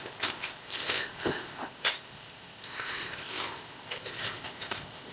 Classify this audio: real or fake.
fake